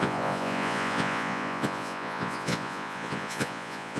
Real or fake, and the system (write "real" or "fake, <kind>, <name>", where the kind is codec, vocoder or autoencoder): fake, vocoder, Vocos